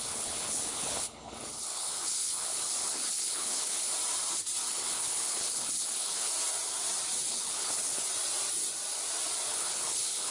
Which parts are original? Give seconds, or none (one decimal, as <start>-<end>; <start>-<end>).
3.9-4.7; 6.3-7.3; 8.0-9.5